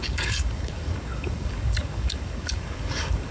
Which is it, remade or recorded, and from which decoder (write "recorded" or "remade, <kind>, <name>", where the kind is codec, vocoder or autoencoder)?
remade, codec, DAC